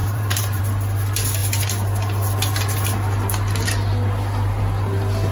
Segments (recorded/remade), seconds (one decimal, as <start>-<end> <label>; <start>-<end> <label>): 0.0-0.6 remade; 0.6-5.3 recorded

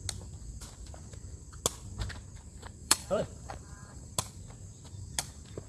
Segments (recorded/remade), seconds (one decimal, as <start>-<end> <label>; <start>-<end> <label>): 0.0-2.8 recorded; 2.8-4.1 remade; 4.1-5.7 recorded

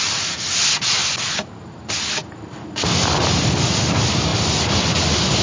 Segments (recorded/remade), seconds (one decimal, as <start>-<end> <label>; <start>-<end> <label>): 0.0-5.4 recorded

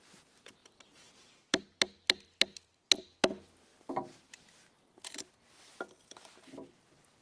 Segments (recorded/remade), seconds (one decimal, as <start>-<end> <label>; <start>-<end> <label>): 0.0-0.6 recorded; 0.6-1.8 remade; 1.8-7.2 recorded

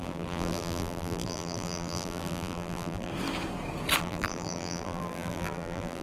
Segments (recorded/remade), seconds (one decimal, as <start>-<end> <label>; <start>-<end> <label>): 0.0-3.1 remade; 3.1-4.0 recorded; 4.0-6.0 remade

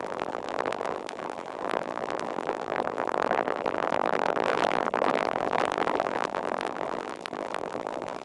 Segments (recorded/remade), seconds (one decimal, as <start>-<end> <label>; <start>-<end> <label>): 0.0-8.2 remade

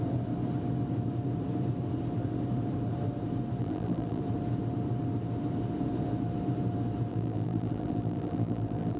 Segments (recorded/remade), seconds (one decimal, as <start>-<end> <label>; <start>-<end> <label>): 0.0-3.6 recorded; 3.6-4.2 remade; 4.2-7.1 recorded; 7.1-9.0 remade